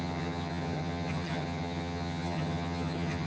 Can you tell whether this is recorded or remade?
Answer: remade